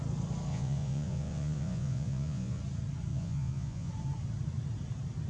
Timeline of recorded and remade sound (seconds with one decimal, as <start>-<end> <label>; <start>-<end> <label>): 0.0-0.5 recorded; 0.5-2.6 remade; 2.6-3.1 recorded; 3.1-3.9 remade; 3.9-5.3 recorded